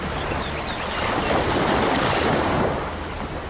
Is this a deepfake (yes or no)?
no